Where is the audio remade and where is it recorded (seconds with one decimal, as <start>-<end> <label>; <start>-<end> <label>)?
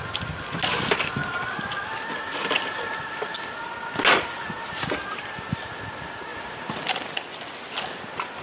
0.0-8.4 recorded